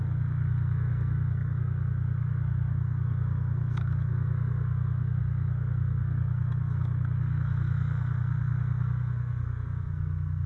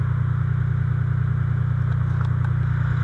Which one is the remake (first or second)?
first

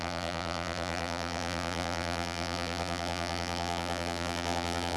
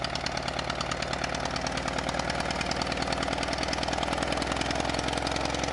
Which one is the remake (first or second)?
first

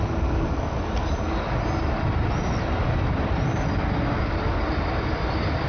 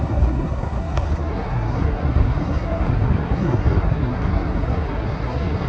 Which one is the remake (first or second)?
second